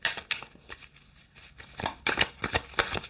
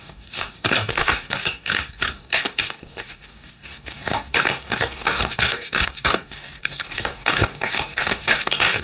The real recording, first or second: first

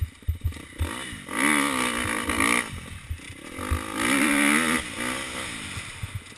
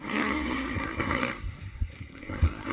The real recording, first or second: first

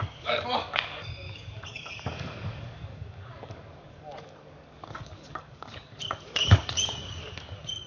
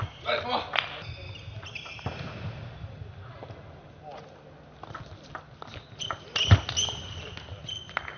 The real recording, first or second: second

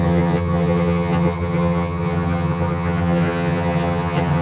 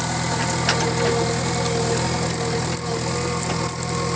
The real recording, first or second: second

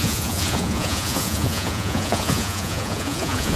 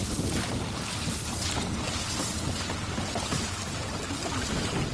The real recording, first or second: second